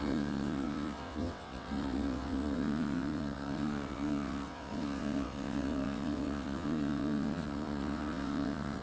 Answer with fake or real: fake